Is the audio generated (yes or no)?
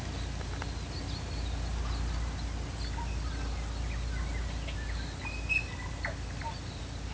no